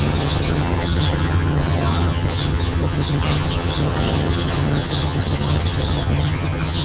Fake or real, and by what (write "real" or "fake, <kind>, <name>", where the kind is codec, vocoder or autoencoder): fake, vocoder, HiFi-GAN